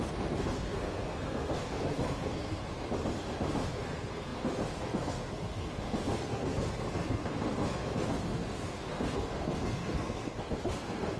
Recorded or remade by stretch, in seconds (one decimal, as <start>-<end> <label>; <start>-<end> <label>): 0.0-2.6 remade; 2.6-3.7 recorded; 3.7-11.2 remade